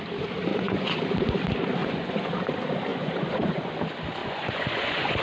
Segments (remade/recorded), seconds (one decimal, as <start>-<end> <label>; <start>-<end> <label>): 0.0-0.5 recorded; 0.5-1.0 remade; 1.0-1.8 recorded; 1.8-2.3 remade; 2.3-2.9 recorded; 2.9-3.7 remade; 3.7-4.2 recorded; 4.2-5.2 remade